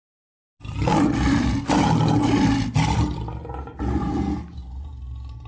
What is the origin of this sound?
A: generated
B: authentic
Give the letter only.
B